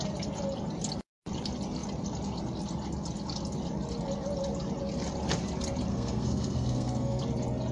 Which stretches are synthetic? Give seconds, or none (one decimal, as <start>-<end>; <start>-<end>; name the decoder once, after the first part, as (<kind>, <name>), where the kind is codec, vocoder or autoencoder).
5.9-7.2 (codec, SNAC)